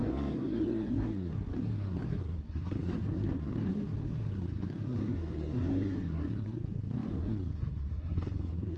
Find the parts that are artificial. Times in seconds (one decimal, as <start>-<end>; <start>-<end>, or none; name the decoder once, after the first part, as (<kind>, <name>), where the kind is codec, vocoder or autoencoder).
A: 0.0-8.8 (codec, SNAC)